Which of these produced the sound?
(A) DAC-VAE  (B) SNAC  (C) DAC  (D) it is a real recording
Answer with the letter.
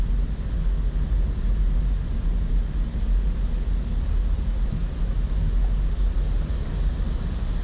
D